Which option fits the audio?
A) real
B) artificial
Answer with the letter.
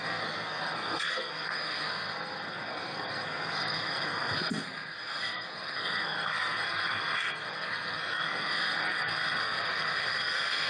B